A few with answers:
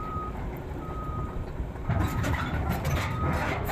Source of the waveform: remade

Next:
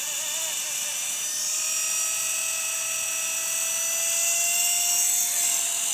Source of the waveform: recorded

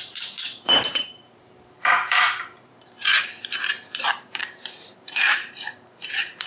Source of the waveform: remade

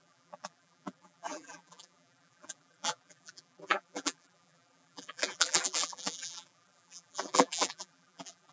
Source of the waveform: remade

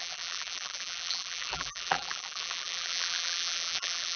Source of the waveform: remade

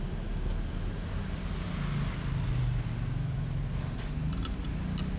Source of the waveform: recorded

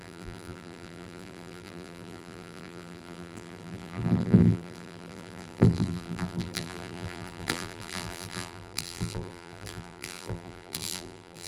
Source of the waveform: remade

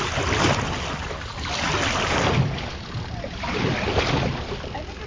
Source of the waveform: recorded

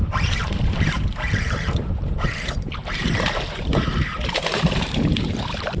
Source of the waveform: remade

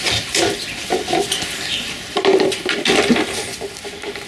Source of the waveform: remade